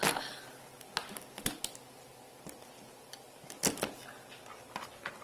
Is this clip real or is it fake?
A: real